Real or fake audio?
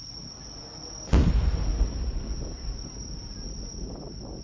real